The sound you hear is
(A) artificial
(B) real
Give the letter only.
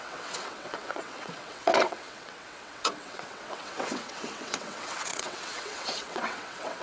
A